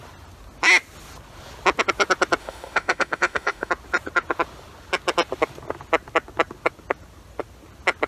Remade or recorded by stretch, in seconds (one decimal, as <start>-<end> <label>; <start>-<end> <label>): 0.0-2.4 recorded; 2.4-3.7 remade; 3.7-8.1 recorded